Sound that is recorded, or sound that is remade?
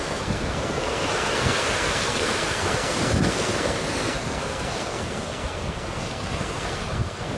remade